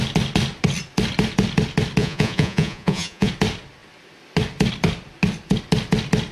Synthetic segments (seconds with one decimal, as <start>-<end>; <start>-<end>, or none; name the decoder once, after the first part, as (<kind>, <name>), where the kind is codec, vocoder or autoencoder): 2.0-3.3 (vocoder, Vocos)